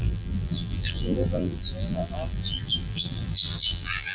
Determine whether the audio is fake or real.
fake